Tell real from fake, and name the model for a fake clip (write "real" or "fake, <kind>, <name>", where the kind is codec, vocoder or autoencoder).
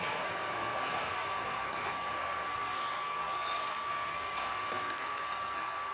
fake, codec, SNAC